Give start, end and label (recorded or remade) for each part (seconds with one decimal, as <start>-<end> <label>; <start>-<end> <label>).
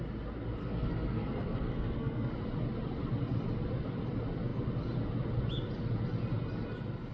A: 0.0-0.6 recorded; 0.6-2.3 remade; 2.3-7.1 recorded